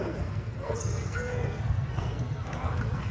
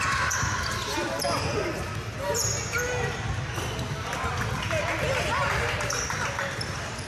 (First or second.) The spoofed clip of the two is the first